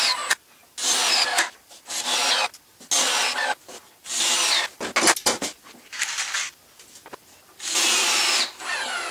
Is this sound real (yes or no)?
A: yes